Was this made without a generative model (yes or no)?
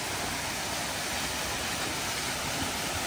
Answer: yes